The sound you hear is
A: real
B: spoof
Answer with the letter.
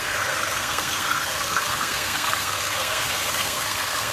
B